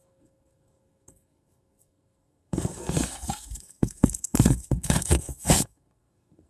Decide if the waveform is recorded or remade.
remade